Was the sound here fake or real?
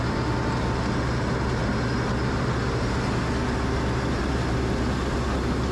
real